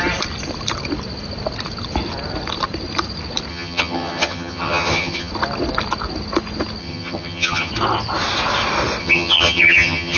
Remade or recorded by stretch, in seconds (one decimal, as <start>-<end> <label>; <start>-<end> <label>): 0.0-3.5 recorded; 3.5-5.3 remade; 5.3-6.8 recorded; 6.8-7.7 remade; 7.7-9.0 recorded; 9.0-10.2 remade